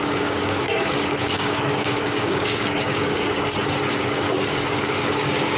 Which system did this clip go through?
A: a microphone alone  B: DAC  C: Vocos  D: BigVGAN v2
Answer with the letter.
B